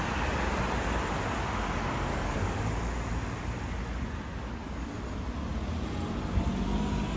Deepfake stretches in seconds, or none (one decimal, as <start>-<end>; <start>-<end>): 2.1-2.7; 4.3-5.0